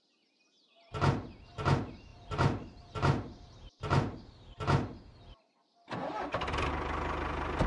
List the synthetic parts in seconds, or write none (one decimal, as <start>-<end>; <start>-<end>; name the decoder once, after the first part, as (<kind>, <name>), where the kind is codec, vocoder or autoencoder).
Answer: 2.1-4.3 (vocoder, BigVGAN v2); 6.0-6.7

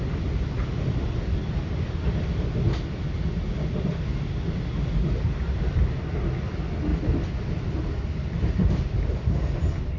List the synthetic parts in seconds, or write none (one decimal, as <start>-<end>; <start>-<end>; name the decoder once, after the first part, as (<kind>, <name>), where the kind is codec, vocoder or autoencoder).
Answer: none

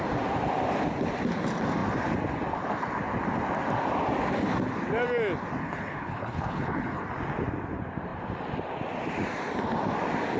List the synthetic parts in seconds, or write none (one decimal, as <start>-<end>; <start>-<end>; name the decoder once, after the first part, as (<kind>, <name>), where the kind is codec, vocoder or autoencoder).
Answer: 5.6-7.0 (codec, HILCodec)

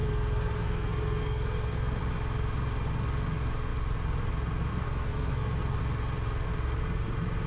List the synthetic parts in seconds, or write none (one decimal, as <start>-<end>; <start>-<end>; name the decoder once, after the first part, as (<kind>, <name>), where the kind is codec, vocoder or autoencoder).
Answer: 0.0-2.0 (codec, SNAC); 4.7-5.8

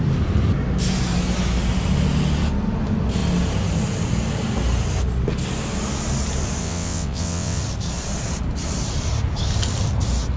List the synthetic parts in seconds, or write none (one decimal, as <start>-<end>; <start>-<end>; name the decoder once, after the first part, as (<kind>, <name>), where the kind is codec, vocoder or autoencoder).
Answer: 6.6-7.6 (vocoder, WaveNeXt)